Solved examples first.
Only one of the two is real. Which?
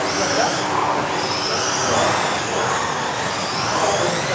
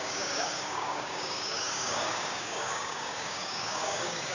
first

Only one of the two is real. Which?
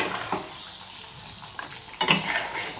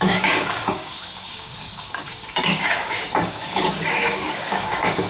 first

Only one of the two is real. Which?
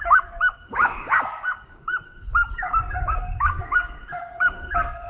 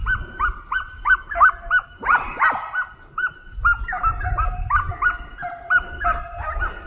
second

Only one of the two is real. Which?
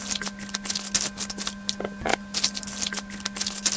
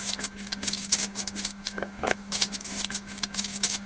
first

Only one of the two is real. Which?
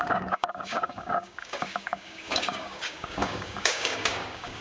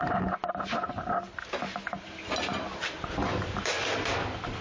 second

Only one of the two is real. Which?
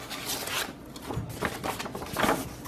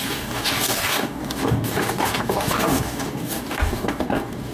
first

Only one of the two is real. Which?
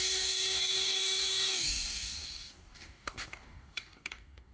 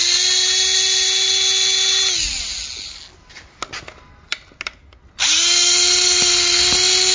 second